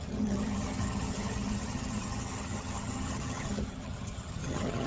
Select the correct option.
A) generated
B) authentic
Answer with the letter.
A